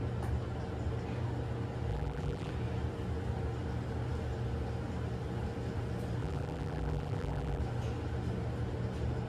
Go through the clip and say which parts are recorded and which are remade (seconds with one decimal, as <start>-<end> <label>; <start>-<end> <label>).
0.0-1.9 recorded; 1.9-2.5 remade; 2.5-6.2 recorded; 6.2-7.6 remade; 7.6-9.3 recorded